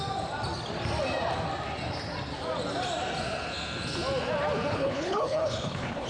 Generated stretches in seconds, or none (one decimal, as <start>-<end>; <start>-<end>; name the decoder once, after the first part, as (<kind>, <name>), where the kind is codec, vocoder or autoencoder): 4.7-6.1 (codec, HILCodec)